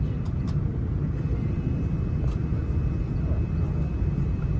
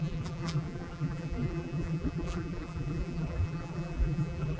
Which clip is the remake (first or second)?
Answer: second